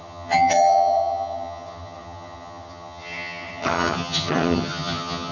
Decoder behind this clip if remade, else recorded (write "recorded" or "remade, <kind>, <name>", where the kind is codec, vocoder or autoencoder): remade, vocoder, HiFi-GAN